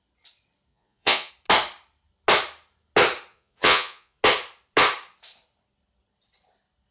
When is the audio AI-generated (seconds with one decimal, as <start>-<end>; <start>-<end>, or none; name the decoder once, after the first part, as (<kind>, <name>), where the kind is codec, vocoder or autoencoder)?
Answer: 0.7-1.3 (vocoder, Vocos); 3.3-4.2